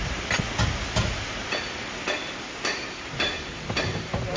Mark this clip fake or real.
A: fake